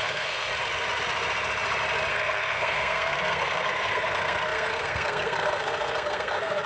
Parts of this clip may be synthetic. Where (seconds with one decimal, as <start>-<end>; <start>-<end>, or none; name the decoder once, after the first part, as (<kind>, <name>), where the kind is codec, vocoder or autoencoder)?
0.0-0.5 (codec, SNAC); 2.1-6.7